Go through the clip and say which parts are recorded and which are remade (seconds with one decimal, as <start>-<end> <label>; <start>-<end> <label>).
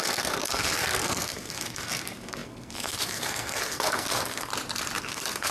0.0-4.5 remade; 4.5-5.0 recorded; 5.0-5.5 remade